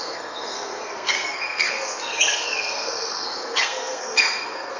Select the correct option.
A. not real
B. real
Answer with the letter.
A